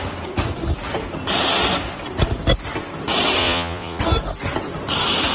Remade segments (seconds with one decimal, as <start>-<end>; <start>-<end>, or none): 3.4-4.0